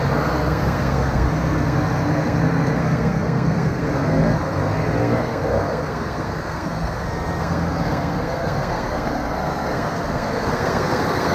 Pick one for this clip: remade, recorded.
remade